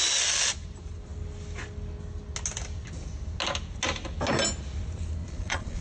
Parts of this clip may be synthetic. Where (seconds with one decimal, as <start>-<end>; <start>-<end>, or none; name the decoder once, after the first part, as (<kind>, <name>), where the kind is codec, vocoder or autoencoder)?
5.2-5.8 (vocoder, Vocos)